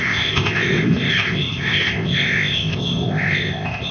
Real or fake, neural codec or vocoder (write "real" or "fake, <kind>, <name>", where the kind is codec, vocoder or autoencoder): fake, codec, ZipCodec